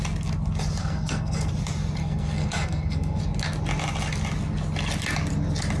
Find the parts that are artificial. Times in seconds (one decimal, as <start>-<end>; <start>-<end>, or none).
0.8-1.5; 2.0-3.2

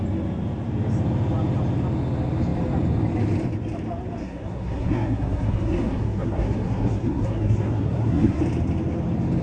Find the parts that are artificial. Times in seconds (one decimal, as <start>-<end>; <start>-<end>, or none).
4.2-8.4